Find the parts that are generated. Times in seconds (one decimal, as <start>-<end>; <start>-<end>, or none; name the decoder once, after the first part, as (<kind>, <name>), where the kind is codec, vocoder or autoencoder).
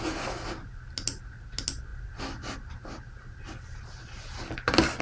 none